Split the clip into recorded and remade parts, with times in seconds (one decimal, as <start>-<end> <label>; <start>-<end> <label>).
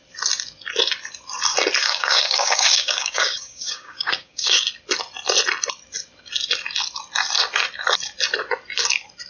0.0-1.8 recorded; 1.8-4.6 remade; 4.6-9.3 recorded